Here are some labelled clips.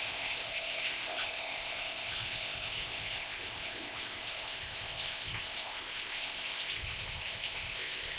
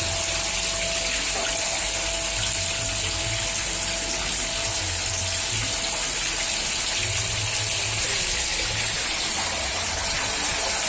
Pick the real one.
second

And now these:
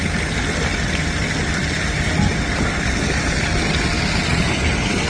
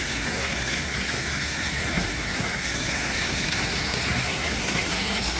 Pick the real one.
first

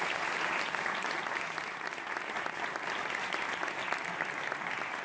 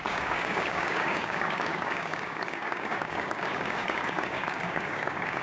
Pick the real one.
first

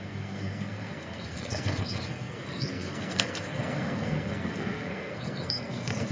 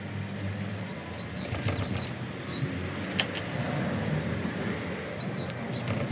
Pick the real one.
second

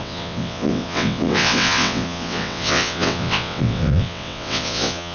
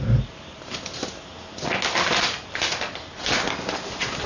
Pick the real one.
second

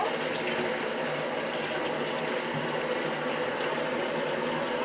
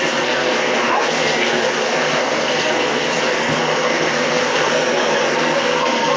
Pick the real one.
first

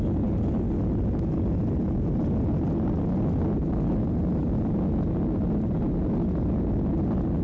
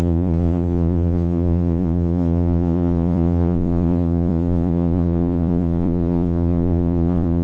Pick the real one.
first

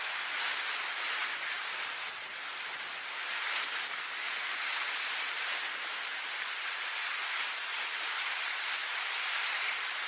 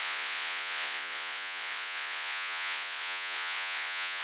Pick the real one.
first